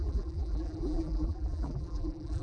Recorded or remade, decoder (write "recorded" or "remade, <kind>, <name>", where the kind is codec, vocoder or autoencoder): remade, vocoder, BigVGAN v2